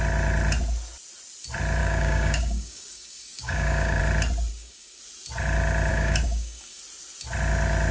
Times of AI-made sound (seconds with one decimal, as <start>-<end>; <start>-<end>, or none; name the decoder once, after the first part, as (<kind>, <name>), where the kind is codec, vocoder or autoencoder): 1.8-4.0 (codec, DAC); 4.5-5.0; 5.9-6.8